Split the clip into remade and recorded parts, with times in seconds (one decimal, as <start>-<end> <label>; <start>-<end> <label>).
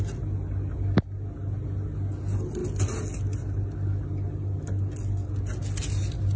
0.0-6.4 recorded